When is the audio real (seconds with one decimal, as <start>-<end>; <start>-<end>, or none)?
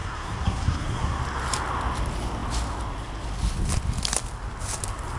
1.2-5.2